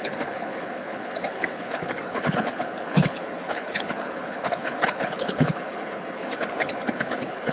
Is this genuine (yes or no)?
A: no